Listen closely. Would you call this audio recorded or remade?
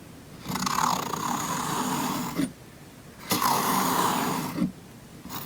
recorded